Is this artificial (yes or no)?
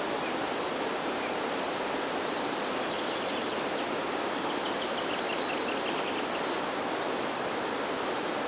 no